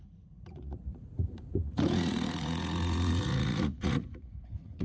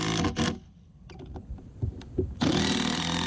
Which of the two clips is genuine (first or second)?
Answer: second